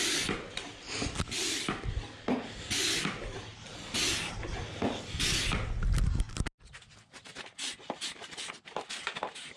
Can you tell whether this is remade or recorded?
recorded